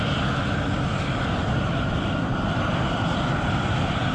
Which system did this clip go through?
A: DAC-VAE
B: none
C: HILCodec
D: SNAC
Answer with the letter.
B